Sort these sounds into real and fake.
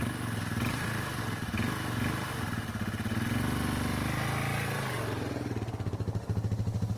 real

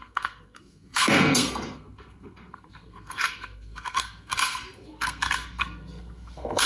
fake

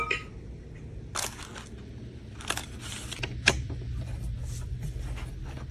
real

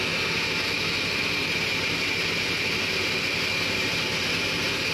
real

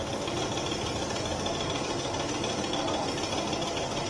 real